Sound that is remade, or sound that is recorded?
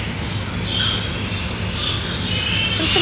recorded